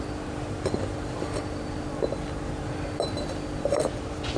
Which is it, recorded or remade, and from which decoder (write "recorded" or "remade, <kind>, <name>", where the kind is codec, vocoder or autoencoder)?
recorded